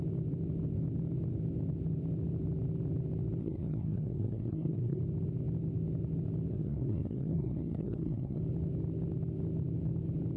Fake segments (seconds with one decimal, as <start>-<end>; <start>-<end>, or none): 3.4-5.0; 6.5-8.4